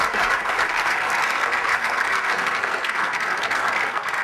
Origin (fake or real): fake